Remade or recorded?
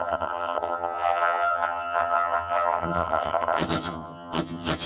remade